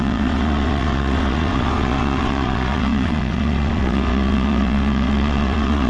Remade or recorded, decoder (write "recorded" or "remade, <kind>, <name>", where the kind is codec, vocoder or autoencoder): remade, vocoder, WaveNeXt